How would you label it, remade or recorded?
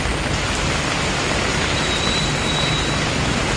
remade